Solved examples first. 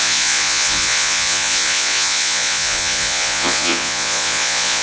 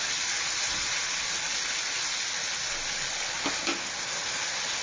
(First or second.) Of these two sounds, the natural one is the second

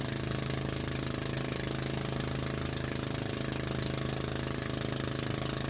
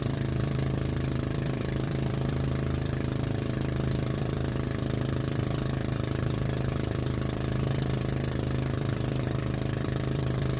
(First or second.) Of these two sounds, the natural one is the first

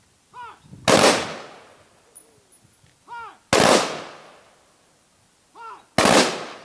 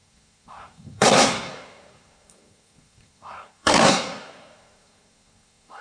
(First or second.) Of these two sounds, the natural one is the first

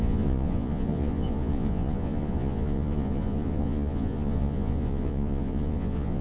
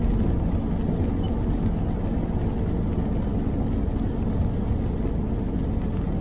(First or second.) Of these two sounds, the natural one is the second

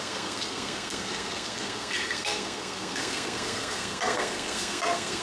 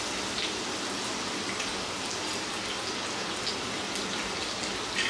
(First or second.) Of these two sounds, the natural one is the second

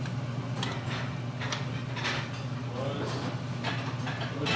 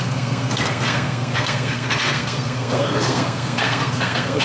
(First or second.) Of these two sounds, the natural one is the first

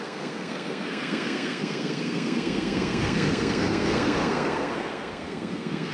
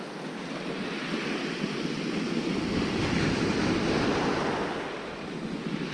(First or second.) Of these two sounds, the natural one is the second